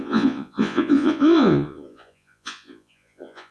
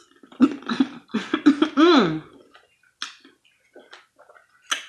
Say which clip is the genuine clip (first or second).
second